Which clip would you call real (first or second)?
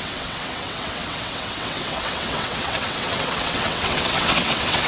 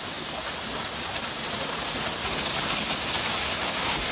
second